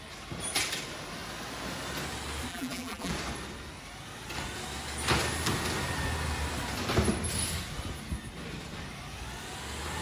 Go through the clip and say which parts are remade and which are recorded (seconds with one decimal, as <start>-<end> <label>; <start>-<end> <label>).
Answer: 0.0-2.5 recorded; 2.5-3.1 remade; 3.1-10.0 recorded